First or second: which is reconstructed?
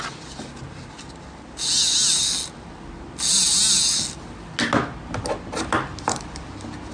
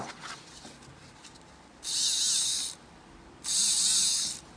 second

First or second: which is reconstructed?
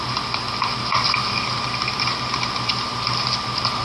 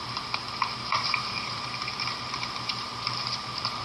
second